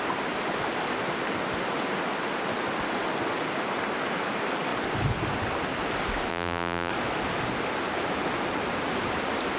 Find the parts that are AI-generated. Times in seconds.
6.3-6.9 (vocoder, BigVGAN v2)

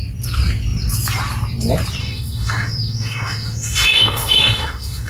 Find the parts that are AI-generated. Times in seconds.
2.0-5.1 (autoencoder, DAC-VAE)

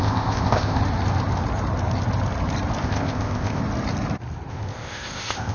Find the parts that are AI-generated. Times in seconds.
0.0-0.8 (codec, ZipCodec); 2.8-3.6; 4.5-5.5